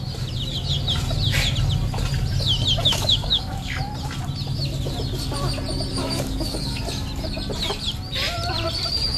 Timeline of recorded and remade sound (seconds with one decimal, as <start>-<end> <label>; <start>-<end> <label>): 0.0-2.8 recorded; 2.8-3.8 remade; 3.8-5.9 recorded; 5.9-6.8 remade; 6.8-9.2 recorded